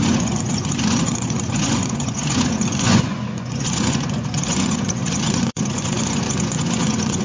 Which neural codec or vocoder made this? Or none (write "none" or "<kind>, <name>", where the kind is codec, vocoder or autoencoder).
vocoder, Vocos